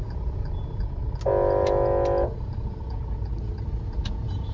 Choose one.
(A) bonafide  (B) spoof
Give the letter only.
A